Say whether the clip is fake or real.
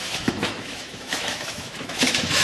fake